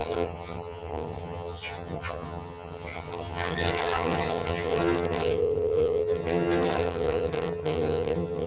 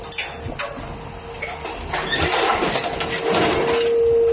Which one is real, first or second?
second